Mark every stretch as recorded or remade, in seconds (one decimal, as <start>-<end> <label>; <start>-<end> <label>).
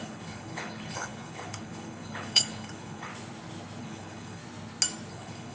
0.0-3.1 remade; 3.1-3.8 recorded; 3.8-4.4 remade; 4.4-5.1 recorded; 5.1-5.5 remade